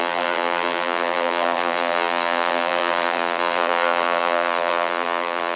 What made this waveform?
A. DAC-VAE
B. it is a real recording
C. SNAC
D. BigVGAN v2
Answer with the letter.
D